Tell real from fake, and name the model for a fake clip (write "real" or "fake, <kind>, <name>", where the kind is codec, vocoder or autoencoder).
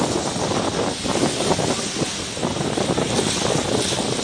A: real